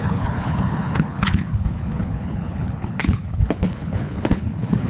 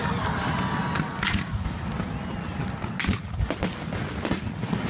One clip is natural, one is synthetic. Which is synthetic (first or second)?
first